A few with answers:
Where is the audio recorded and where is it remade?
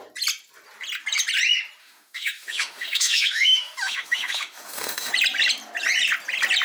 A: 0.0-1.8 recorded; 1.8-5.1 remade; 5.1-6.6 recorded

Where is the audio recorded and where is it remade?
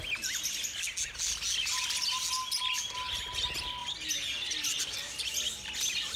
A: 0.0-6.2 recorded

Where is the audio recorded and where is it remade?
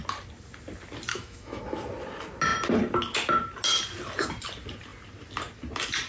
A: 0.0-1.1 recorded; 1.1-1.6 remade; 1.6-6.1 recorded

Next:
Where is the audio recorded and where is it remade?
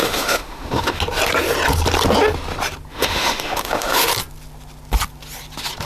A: 0.0-1.0 remade; 1.0-2.9 recorded; 2.9-4.1 remade; 4.1-5.9 recorded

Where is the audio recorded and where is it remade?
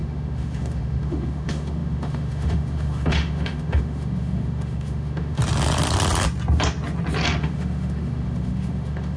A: 0.0-5.4 remade; 5.4-7.4 recorded; 7.4-9.2 remade